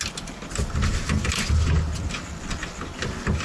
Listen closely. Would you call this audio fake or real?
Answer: real